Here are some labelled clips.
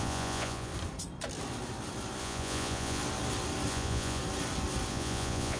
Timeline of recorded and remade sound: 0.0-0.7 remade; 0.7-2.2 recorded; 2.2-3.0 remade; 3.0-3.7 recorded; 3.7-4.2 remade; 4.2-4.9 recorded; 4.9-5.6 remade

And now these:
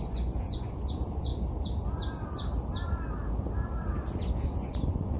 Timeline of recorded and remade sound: 0.0-1.3 remade; 1.3-4.4 recorded; 4.4-5.2 remade

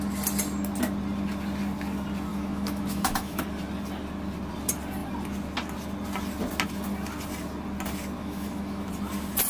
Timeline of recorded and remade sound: 0.0-2.3 recorded; 2.3-3.4 remade; 3.4-8.2 recorded; 8.2-8.9 remade; 8.9-9.5 recorded

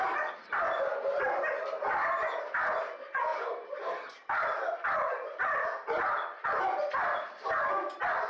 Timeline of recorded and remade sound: 0.0-3.3 recorded; 3.3-6.6 remade; 6.6-8.3 recorded